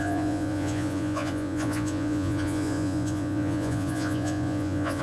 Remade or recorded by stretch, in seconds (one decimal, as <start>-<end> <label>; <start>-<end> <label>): 0.0-5.0 remade